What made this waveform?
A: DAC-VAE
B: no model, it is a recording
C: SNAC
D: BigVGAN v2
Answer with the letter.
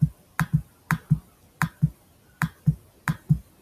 B